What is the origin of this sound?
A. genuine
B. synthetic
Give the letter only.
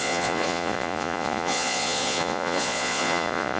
B